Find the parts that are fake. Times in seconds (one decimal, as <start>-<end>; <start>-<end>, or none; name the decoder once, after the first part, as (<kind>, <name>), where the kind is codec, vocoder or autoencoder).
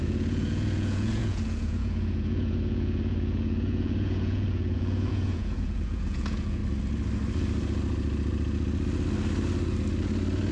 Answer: 0.0-6.6 (vocoder, Vocos)